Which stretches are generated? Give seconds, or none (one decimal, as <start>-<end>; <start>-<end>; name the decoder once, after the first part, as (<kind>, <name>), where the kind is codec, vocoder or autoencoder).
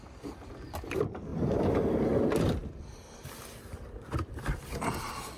none